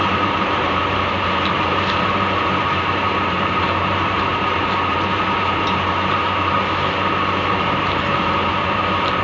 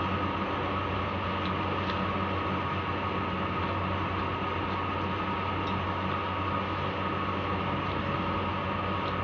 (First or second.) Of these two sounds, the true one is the second